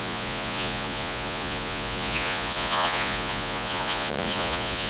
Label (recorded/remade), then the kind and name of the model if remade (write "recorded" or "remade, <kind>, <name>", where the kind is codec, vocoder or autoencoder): remade, vocoder, Vocos